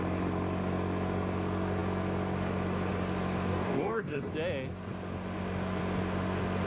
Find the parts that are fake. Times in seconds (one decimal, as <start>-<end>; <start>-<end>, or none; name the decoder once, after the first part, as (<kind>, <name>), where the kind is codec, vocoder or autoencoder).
3.5-4.3 (codec, DAC)

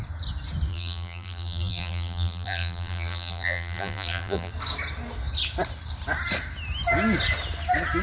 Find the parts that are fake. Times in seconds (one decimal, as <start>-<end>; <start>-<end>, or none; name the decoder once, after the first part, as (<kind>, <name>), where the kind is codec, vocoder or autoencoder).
0.7-4.5 (vocoder, BigVGAN v2)

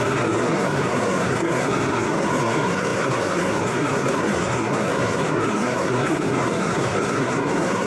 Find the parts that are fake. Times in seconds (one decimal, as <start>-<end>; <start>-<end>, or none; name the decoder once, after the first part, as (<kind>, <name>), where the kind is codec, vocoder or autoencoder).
0.0-7.9 (codec, SNAC)

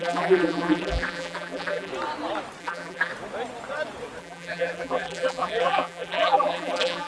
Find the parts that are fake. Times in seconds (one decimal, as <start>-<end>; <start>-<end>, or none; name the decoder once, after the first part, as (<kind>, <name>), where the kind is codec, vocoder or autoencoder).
0.0-1.9 (vocoder, BigVGAN v2); 2.6-3.1; 4.2-7.1

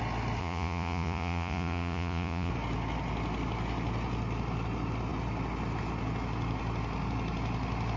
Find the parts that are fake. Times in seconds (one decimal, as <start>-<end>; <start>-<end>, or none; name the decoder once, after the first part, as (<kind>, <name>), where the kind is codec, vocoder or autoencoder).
0.4-2.5 (vocoder, Vocos)

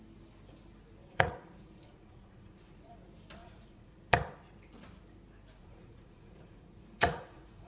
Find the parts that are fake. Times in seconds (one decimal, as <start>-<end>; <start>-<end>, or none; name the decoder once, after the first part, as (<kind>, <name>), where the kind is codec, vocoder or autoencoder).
1.0-2.9 (vocoder, Vocos); 3.4-4.0; 5.6-7.7

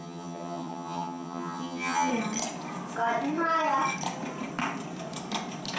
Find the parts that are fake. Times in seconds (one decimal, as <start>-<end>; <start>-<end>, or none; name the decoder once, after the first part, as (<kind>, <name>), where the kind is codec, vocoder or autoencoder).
0.0-2.1 (vocoder, HiFi-GAN)